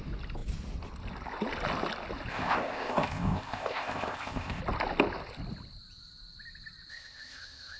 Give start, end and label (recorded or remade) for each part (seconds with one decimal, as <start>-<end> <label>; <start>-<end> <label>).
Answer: 0.0-2.3 recorded; 2.3-4.6 remade; 4.6-6.9 recorded; 6.9-7.8 remade